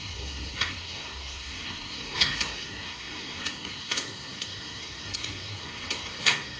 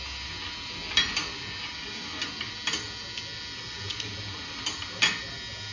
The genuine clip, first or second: second